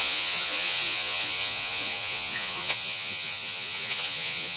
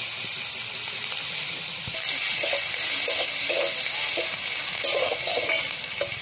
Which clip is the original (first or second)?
second